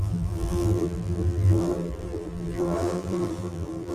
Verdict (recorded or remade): remade